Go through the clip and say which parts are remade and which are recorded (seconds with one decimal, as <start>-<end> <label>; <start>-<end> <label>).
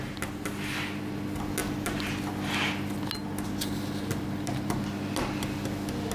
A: 0.0-6.1 recorded